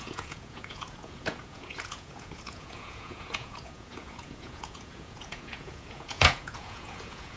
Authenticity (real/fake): fake